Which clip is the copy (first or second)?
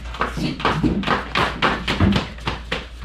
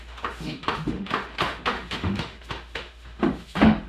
second